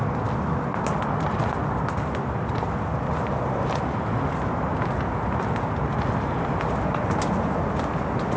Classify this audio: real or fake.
real